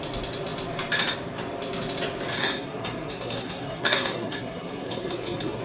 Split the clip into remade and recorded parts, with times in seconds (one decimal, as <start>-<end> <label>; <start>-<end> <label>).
0.0-2.4 recorded; 2.4-5.6 remade